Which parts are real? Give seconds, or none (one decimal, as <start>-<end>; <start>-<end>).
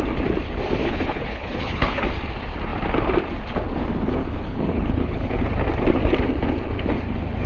0.0-0.8; 2.0-4.2; 5.4-7.5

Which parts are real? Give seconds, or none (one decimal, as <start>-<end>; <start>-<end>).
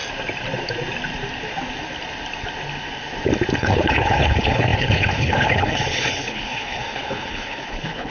0.0-3.6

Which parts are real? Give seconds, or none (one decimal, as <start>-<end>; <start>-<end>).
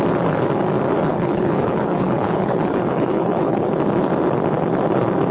0.0-1.1; 3.7-5.3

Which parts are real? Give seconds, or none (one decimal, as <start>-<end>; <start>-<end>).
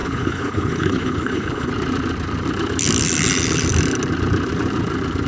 1.7-5.3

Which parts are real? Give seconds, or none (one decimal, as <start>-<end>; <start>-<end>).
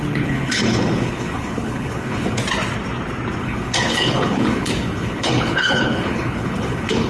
2.4-3.4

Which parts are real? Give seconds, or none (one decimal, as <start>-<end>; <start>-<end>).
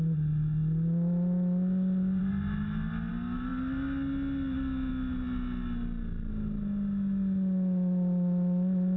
0.0-9.0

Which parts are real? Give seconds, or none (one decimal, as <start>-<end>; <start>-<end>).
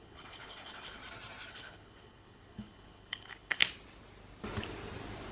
1.0-1.5; 3.6-5.3